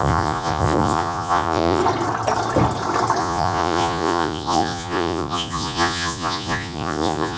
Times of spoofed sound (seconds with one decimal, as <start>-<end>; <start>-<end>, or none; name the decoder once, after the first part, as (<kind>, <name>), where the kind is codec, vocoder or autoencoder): 0.0-1.8 (vocoder, Vocos); 3.2-7.4